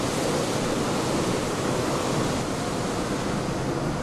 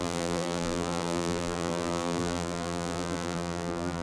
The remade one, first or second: second